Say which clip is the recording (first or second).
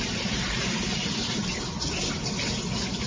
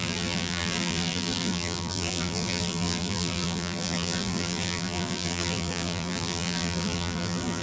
first